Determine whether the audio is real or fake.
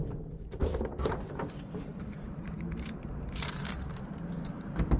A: fake